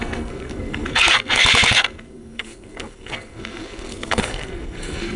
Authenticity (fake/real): fake